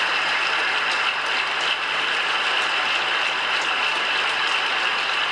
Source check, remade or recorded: recorded